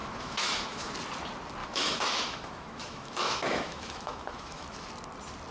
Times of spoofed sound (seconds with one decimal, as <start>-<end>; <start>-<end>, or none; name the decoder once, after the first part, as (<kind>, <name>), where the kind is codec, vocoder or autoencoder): 0.0-0.9 (autoencoder, DAC-VAE); 1.6-4.9